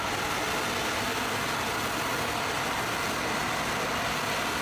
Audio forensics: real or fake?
real